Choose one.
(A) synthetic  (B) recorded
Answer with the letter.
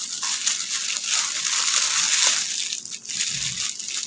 B